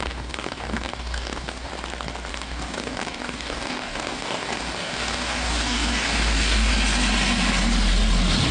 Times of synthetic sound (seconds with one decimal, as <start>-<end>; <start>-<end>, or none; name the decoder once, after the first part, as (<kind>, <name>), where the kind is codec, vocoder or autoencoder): 0.0-1.7 (codec, DAC); 2.3-6.7